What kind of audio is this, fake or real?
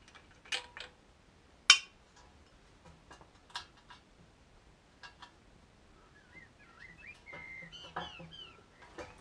real